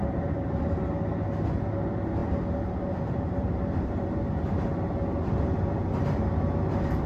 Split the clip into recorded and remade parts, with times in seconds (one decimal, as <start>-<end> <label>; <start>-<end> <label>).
0.0-7.1 recorded

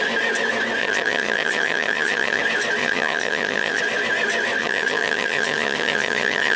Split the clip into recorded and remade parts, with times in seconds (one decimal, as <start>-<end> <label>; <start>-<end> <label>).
0.0-0.8 recorded; 0.8-2.4 remade; 2.4-2.8 recorded; 2.8-3.8 remade; 3.8-4.6 recorded; 4.6-6.6 remade

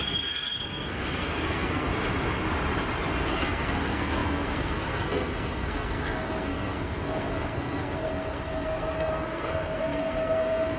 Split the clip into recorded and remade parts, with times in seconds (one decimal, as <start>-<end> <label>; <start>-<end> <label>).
0.0-1.9 remade; 1.9-3.3 recorded; 3.3-10.8 remade